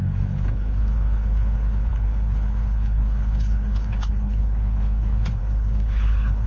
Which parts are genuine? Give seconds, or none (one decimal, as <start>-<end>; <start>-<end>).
none